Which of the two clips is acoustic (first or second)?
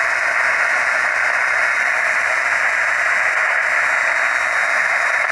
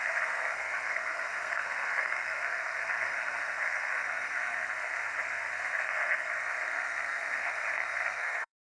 first